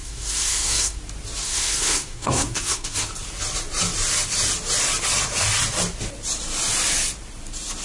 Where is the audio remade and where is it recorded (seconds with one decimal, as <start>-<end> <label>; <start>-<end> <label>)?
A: 0.0-1.0 remade; 1.0-1.4 recorded; 1.4-3.1 remade; 3.1-7.8 recorded